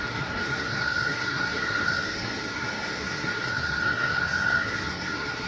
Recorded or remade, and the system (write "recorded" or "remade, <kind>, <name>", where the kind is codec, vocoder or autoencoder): remade, codec, SNAC